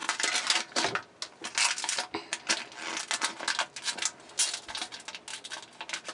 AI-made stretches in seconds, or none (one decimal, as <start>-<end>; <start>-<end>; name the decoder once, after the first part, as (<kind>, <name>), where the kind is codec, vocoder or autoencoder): none